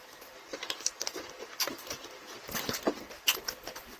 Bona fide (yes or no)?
yes